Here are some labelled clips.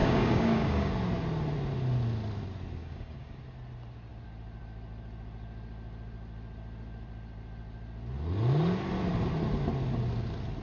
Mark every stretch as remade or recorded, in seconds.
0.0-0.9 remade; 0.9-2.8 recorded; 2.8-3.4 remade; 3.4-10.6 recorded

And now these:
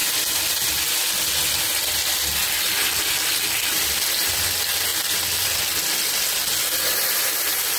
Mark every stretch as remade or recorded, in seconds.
0.0-2.4 recorded; 2.4-4.3 remade; 4.3-7.8 recorded